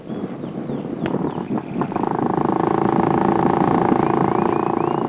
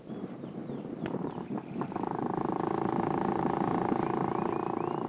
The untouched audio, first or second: first